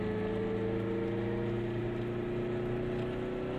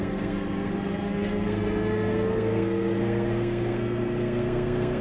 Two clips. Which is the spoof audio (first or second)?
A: second